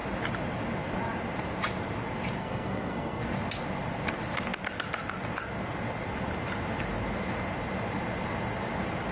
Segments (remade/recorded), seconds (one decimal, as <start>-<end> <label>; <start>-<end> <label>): 0.0-2.4 recorded; 2.4-3.2 remade; 3.2-9.1 recorded

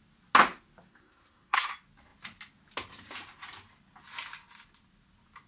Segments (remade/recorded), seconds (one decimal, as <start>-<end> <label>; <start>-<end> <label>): 0.0-0.9 recorded; 0.9-1.7 remade; 1.7-5.5 recorded

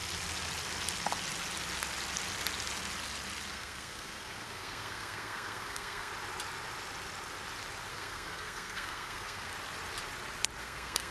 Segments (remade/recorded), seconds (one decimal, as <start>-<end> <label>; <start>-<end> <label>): 0.0-3.5 recorded; 3.5-6.1 remade; 6.1-7.9 recorded; 7.9-9.5 remade; 9.5-10.6 recorded; 10.6-11.1 remade

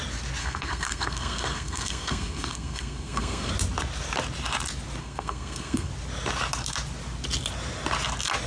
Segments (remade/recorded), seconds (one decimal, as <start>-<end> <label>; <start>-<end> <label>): 0.0-0.4 recorded; 0.4-3.5 remade; 3.5-5.0 recorded; 5.0-5.9 remade; 5.9-8.5 recorded

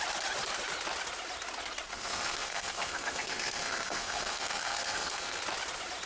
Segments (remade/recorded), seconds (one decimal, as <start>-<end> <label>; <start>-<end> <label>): 0.0-1.9 recorded; 1.9-5.4 remade; 5.4-6.1 recorded

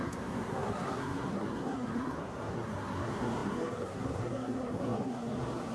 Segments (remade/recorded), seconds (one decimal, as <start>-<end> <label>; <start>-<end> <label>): 0.0-5.7 remade

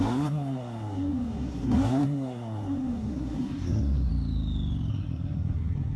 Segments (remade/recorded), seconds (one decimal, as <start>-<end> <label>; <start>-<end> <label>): 0.0-4.1 remade; 4.1-4.9 recorded; 4.9-6.0 remade